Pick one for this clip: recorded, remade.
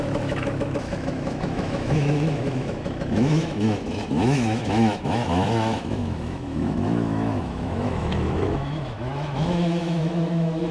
remade